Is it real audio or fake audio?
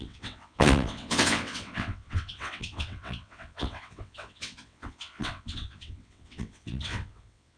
fake